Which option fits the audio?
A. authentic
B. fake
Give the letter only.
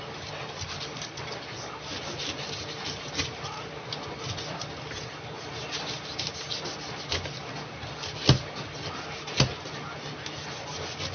A